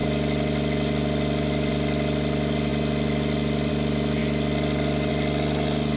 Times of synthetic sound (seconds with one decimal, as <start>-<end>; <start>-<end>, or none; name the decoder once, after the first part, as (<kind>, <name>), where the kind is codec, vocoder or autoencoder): none